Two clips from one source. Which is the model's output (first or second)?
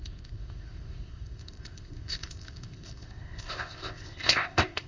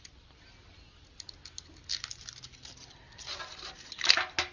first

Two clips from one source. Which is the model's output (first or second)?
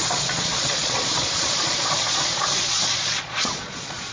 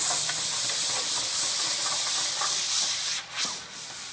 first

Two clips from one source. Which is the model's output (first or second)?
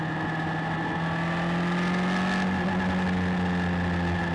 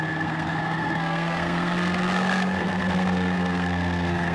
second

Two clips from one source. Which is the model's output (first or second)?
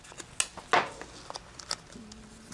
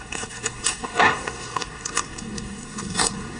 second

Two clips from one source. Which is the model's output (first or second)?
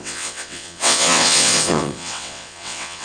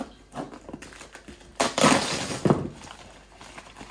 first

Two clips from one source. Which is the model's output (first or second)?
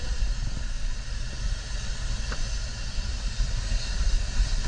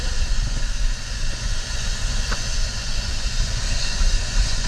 second